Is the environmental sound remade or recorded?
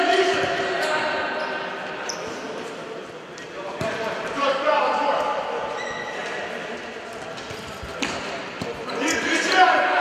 remade